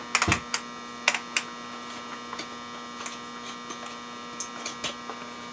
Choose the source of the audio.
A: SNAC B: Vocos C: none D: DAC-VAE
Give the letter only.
C